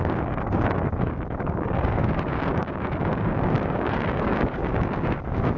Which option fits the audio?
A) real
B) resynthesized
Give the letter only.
B